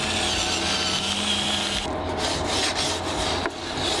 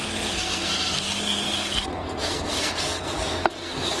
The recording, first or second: first